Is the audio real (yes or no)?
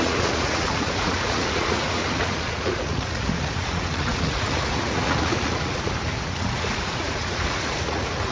no